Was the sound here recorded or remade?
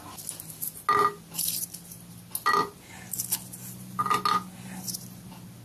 recorded